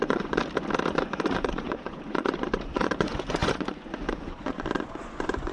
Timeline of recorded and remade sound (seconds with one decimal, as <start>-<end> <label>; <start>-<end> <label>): 0.0-0.4 remade; 0.4-0.9 recorded; 0.9-5.5 remade